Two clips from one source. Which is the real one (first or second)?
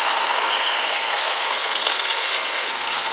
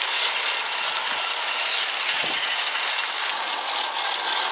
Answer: second